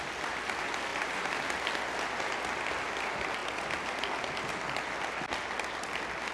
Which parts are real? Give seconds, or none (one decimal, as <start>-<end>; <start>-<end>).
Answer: 0.0-6.3